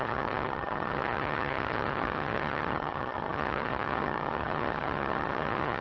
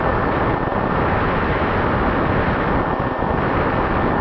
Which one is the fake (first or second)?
first